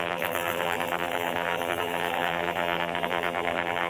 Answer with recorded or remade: remade